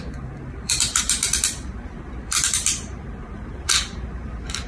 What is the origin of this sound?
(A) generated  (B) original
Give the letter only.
A